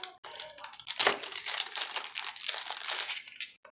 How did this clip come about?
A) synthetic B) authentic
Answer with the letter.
B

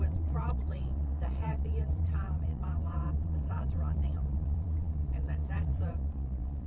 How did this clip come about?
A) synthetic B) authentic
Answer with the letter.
A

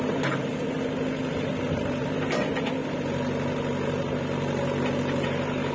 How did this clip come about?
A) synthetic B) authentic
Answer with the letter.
B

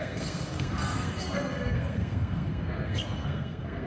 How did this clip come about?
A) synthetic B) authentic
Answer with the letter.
A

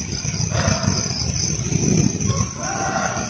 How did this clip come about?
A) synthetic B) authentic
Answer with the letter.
B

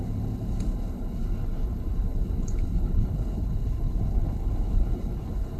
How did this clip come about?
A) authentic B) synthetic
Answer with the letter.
B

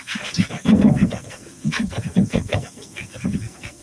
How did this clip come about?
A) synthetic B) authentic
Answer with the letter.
A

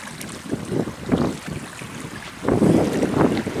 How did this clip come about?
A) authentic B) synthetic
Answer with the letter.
A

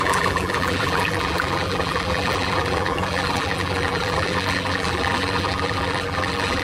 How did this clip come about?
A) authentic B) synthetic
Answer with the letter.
B